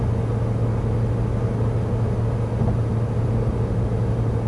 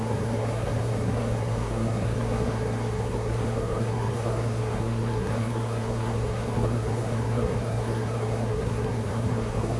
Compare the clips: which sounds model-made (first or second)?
second